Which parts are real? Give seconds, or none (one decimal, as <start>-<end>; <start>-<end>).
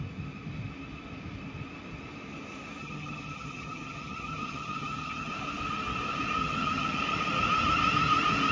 0.0-2.8; 5.3-6.4; 7.0-8.5